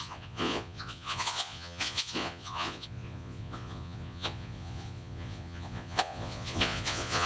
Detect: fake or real fake